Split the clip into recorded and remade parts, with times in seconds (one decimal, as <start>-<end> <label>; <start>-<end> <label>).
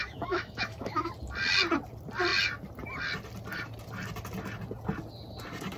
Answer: 0.0-1.1 remade; 1.1-5.8 recorded